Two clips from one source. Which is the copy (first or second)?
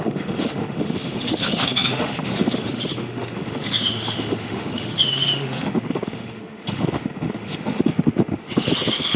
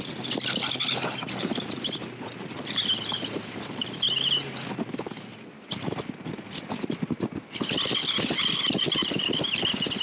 first